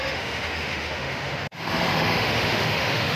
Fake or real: fake